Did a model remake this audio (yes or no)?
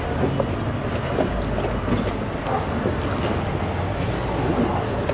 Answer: no